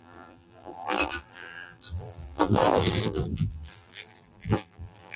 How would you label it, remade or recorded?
remade